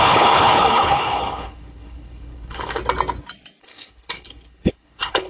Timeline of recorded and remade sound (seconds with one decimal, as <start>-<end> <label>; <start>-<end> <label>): 0.0-2.8 remade; 2.8-3.6 recorded; 3.6-5.3 remade